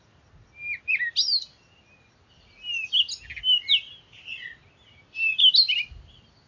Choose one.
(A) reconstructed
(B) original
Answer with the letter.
B